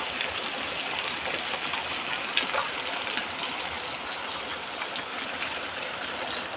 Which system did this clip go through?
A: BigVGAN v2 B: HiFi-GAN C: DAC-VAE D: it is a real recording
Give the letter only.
D